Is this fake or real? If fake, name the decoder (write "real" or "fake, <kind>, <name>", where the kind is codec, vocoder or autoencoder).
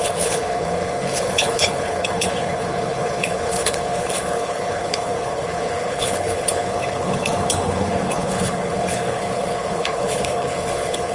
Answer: fake, codec, HILCodec